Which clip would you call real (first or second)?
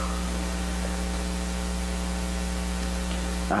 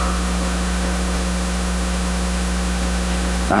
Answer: first